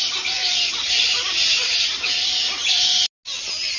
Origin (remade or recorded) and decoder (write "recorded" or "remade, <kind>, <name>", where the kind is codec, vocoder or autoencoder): recorded